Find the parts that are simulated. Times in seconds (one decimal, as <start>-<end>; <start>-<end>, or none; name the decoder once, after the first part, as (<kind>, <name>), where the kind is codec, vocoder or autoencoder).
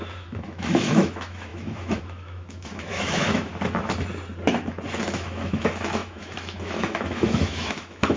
0.0-3.5 (autoencoder, DAC-VAE); 5.0-8.2